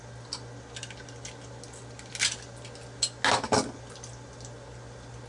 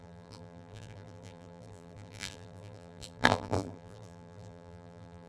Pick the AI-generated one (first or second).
second